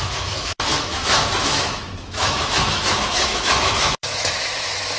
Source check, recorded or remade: remade